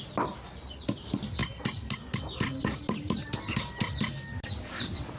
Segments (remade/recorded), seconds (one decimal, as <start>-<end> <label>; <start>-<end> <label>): 0.0-5.2 recorded